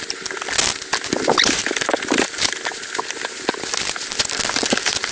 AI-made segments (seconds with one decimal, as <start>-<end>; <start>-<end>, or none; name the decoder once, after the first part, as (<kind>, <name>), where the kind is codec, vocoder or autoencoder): none